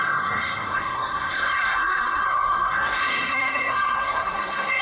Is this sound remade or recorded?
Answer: remade